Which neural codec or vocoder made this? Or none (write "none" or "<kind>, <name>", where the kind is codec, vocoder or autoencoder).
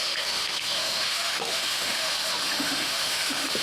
autoencoder, DAC-VAE